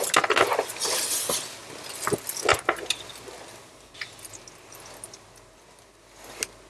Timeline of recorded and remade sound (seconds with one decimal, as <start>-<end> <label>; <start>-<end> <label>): 0.0-6.7 recorded